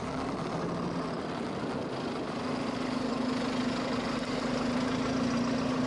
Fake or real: real